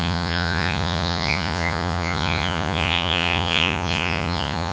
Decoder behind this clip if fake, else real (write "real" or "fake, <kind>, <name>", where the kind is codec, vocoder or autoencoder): fake, vocoder, Vocos